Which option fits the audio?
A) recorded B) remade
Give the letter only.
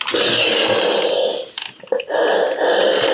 A